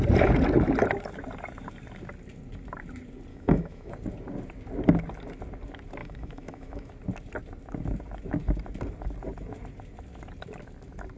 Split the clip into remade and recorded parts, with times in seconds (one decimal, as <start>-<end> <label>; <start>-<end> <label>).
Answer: 0.0-3.3 recorded; 3.3-3.9 remade; 3.9-6.0 recorded; 6.0-6.9 remade; 6.9-11.2 recorded